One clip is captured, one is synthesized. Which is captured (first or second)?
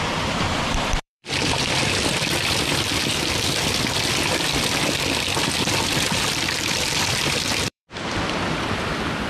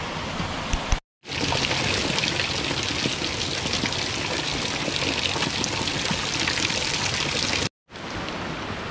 second